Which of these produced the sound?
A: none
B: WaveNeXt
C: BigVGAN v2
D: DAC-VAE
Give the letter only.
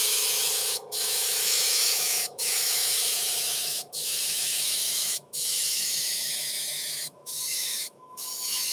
D